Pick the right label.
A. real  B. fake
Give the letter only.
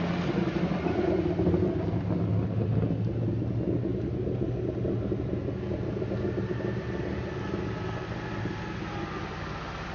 A